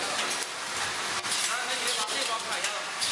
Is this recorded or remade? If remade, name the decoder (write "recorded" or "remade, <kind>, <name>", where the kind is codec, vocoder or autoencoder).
recorded